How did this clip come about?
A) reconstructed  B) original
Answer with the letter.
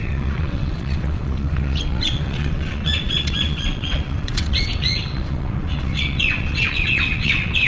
A